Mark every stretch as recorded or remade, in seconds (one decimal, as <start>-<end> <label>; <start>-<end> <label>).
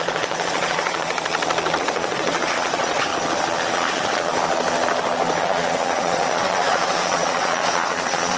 0.0-1.3 remade; 1.3-1.8 recorded; 1.8-3.1 remade; 3.1-3.7 recorded; 3.7-4.3 remade; 4.3-5.4 recorded; 5.4-8.4 remade